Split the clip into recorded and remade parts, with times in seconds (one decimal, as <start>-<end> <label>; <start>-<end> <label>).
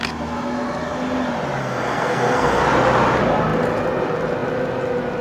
0.0-1.6 recorded; 1.6-2.6 remade; 2.6-5.2 recorded